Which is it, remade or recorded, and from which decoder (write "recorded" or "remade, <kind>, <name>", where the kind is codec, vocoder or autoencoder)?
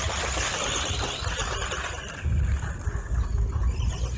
recorded